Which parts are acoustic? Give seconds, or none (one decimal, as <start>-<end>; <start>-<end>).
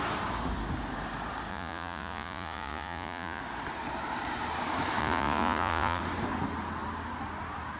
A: 0.0-1.5; 3.4-5.0; 6.0-7.8